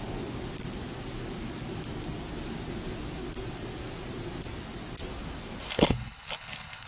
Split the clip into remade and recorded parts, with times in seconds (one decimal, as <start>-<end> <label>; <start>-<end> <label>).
0.0-5.7 recorded; 5.7-6.9 remade